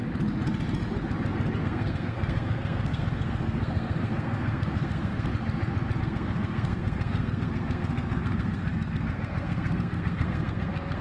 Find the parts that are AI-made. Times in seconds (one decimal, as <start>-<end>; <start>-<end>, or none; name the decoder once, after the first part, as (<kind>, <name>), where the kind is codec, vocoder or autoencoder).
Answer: 1.6-5.3 (codec, SNAC); 6.0-11.0